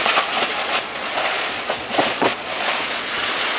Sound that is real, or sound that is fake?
fake